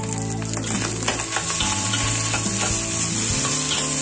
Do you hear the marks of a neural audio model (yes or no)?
no